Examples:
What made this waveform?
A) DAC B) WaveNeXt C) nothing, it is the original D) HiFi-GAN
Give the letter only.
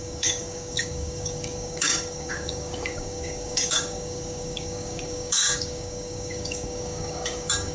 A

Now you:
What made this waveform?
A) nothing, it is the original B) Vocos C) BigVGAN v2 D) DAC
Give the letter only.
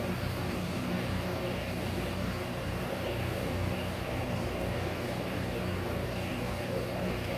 D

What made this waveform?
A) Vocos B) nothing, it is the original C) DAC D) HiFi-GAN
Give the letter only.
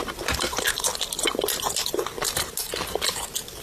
B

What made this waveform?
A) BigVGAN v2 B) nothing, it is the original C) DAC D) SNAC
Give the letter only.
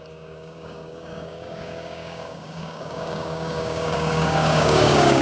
C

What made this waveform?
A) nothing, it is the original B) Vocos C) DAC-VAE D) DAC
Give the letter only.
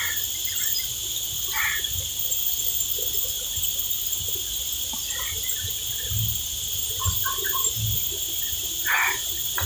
A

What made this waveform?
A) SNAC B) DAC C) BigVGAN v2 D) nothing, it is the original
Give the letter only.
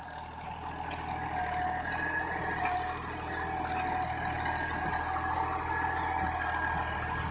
D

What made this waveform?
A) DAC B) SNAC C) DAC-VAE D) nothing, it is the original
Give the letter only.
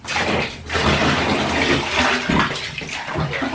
D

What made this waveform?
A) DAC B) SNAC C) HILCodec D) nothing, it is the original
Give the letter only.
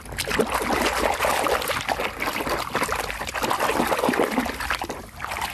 D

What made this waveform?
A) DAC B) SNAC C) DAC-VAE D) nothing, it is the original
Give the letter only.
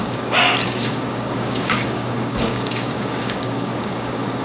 A